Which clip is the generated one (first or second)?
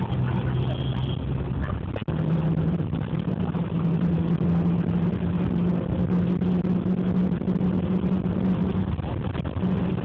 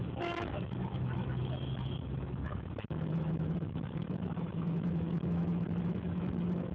second